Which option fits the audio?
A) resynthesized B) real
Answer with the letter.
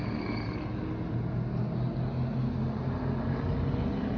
B